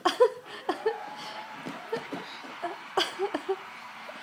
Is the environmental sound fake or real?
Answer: fake